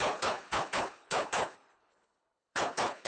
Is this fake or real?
fake